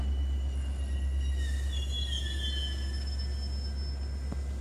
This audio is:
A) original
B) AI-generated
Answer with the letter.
A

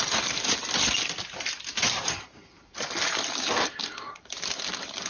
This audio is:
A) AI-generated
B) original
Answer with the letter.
B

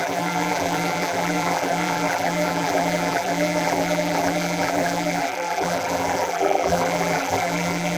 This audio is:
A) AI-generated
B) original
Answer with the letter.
A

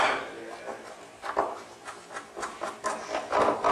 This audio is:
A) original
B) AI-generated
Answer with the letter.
A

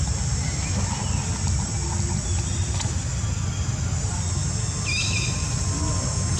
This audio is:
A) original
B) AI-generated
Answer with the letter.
A